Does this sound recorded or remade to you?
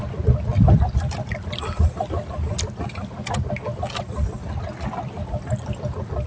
recorded